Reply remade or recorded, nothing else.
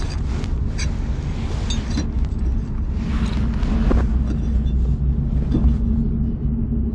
recorded